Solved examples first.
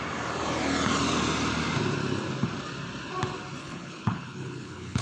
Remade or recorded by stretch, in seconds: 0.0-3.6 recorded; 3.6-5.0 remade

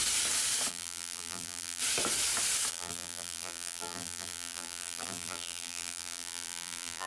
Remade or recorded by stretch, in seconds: 0.0-0.7 recorded; 0.7-1.8 remade; 1.8-2.7 recorded; 2.7-7.1 remade

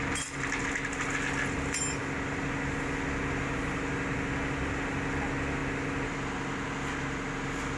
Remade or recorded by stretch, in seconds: 0.0-7.8 recorded

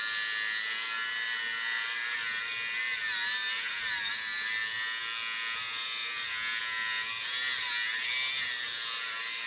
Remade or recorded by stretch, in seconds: 0.0-9.5 recorded

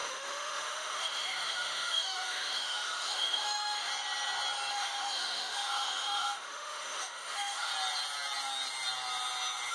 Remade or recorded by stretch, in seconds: 0.0-3.9 remade; 3.9-4.7 recorded; 4.7-7.7 remade; 7.7-9.7 recorded

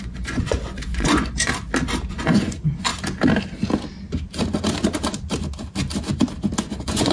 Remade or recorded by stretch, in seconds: 0.0-1.5 remade; 1.5-2.1 recorded; 2.1-2.9 remade; 2.9-6.6 recorded; 6.6-7.1 remade

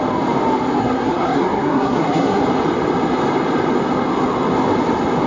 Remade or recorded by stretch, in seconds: 0.0-0.8 recorded; 0.8-2.4 remade; 2.4-5.3 recorded

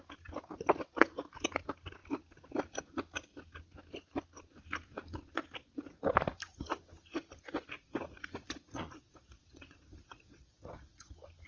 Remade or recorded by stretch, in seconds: 0.0-8.4 recorded; 8.4-11.1 remade; 11.1-11.5 recorded